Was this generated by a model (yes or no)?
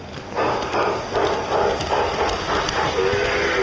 no